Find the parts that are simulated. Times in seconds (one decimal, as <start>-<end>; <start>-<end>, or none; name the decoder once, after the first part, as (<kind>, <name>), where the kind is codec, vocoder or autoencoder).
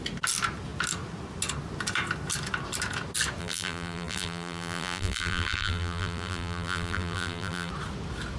3.4-7.7 (vocoder, BigVGAN v2)